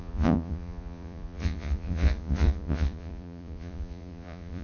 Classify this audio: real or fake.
fake